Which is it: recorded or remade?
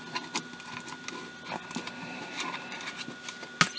recorded